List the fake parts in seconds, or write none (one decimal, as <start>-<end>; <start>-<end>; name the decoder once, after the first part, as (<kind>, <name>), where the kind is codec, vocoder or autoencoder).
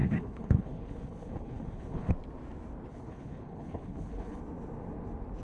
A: 0.0-2.1 (codec, HILCodec); 2.9-4.4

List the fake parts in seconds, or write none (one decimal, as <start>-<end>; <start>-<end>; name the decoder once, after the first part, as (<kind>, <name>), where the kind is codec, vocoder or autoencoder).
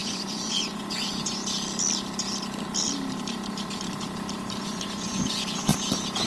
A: 0.0-1.4 (vocoder, Vocos); 4.6-5.7